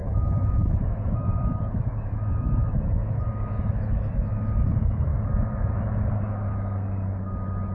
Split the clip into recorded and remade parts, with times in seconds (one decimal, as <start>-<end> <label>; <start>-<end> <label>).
0.0-5.1 remade; 5.1-6.2 recorded; 6.2-7.7 remade